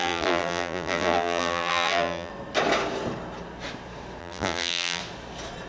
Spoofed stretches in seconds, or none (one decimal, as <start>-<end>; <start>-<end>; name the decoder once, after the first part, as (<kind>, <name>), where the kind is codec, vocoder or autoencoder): 0.0-2.3 (vocoder, BigVGAN v2); 4.2-5.0